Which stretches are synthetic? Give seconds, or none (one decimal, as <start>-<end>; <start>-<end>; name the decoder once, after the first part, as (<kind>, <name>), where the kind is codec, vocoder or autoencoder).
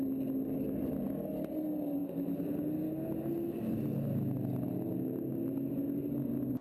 none